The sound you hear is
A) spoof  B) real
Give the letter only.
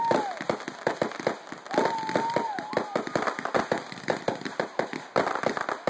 B